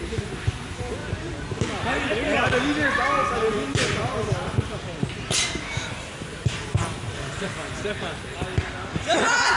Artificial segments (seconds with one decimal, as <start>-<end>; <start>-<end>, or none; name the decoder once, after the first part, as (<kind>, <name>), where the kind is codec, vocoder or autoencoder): 3.2-7.9 (vocoder, BigVGAN v2)

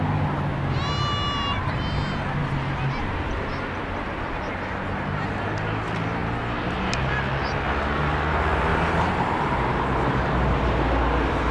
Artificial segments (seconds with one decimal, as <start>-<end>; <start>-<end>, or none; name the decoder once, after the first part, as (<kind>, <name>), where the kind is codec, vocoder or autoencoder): 6.2-7.1 (vocoder, BigVGAN v2); 8.7-11.5

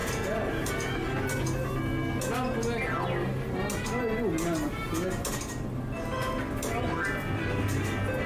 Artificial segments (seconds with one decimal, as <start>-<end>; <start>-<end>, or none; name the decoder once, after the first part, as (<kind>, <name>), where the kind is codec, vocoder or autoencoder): none

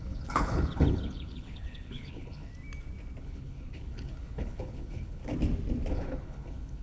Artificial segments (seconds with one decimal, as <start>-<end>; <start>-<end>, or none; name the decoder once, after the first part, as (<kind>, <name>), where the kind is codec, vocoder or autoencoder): 0.0-2.5 (codec, HILCodec); 3.2-5.2; 5.9-6.8

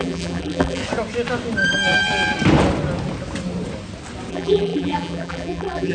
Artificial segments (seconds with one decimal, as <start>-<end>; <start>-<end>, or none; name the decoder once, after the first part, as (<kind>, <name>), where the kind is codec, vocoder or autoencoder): 0.0-0.8 (vocoder, BigVGAN v2); 4.3-5.9

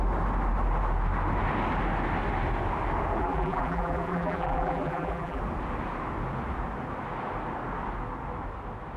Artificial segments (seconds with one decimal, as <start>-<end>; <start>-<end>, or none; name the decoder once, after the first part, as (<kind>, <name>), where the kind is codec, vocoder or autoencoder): 3.2-5.4 (vocoder, BigVGAN v2)

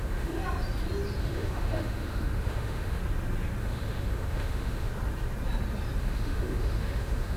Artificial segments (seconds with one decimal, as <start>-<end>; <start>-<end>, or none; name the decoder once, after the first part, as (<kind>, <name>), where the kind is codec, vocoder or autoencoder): 0.0-0.4 (autoencoder, DAC-VAE); 1.2-3.0; 3.6-4.9; 6.0-7.4

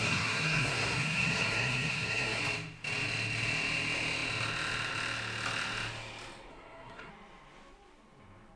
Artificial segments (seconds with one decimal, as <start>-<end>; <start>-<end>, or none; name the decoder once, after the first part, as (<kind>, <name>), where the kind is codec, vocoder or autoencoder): 0.0-2.4 (codec, SNAC); 6.5-7.1